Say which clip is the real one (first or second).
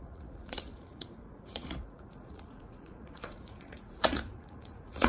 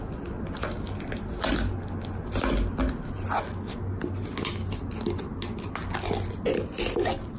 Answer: second